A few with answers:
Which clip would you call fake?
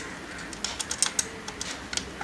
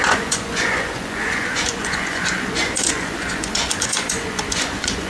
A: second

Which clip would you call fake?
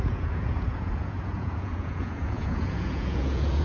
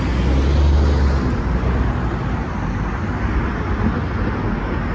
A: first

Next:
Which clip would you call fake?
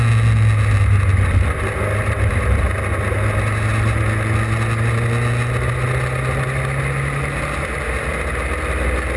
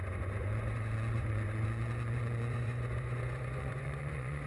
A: second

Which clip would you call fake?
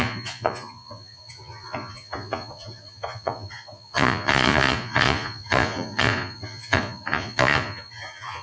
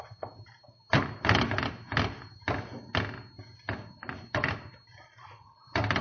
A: first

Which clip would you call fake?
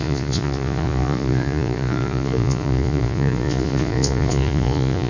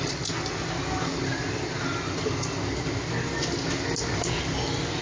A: first